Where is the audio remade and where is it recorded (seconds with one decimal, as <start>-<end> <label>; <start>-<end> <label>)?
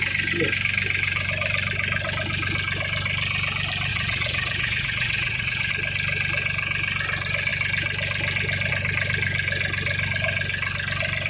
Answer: 0.0-3.9 recorded; 3.9-5.7 remade; 5.7-11.3 recorded